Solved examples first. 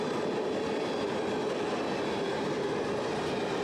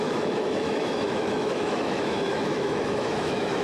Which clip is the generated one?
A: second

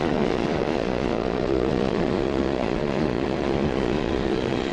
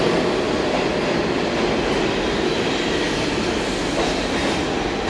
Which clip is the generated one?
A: first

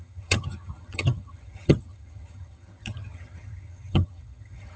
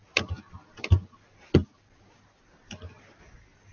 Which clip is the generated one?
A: first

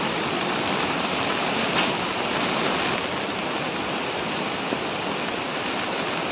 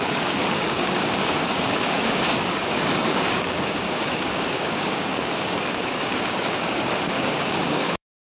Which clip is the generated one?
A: second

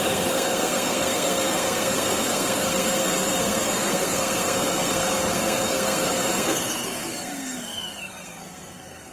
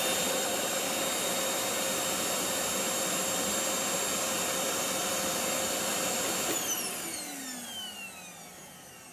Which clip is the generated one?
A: first